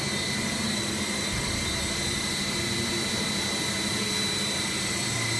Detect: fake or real real